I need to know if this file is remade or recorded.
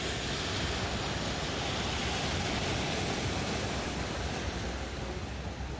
recorded